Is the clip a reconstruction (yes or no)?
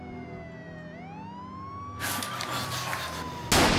no